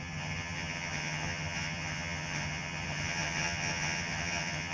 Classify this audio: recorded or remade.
remade